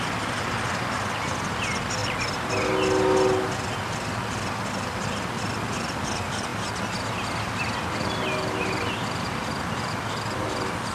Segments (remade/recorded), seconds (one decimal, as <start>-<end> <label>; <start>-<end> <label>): 0.0-10.9 recorded